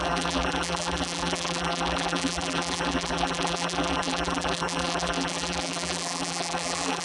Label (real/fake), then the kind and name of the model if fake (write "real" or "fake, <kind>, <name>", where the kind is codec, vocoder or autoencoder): fake, vocoder, BigVGAN v2